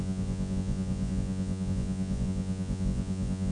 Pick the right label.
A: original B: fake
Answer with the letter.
B